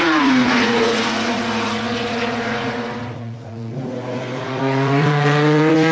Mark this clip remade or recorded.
remade